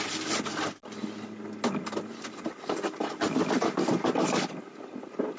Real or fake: real